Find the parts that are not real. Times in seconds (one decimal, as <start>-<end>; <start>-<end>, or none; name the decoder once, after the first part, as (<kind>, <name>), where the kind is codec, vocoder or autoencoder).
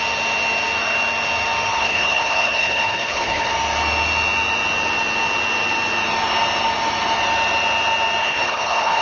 1.7-3.5 (codec, HILCodec); 8.2-9.0